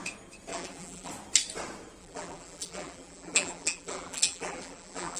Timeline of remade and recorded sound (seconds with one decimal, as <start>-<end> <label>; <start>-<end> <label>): 0.0-0.5 recorded; 0.5-1.1 remade; 1.1-2.0 recorded; 2.0-5.2 remade